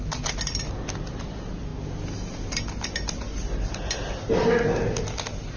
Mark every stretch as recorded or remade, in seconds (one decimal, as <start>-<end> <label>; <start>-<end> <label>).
0.0-5.6 recorded